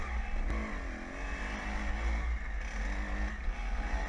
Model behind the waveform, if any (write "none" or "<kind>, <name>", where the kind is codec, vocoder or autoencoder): none